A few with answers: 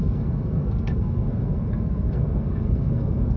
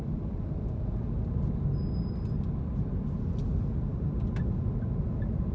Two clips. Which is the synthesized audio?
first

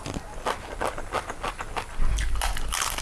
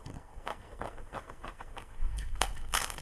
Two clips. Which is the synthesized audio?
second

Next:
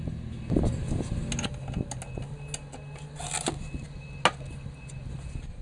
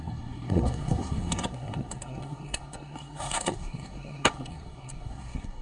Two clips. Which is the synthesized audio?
second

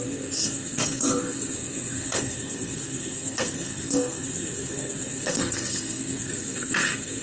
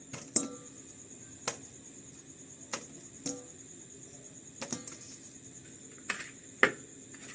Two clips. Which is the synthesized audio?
first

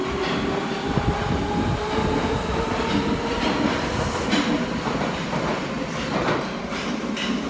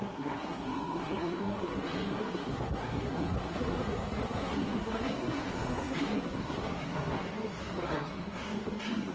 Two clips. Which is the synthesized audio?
second